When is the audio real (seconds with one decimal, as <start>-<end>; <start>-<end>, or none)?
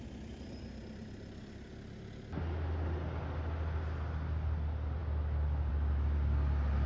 0.0-6.9